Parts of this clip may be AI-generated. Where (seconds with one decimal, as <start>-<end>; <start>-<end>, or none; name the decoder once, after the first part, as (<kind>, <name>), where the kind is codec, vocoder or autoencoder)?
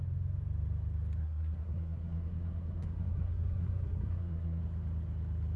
1.2-4.6 (codec, SNAC)